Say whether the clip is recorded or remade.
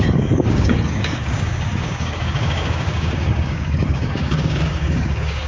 remade